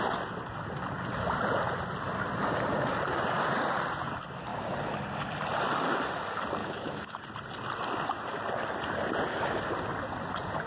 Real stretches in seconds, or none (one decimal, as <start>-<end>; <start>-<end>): 0.0-6.6; 7.2-10.7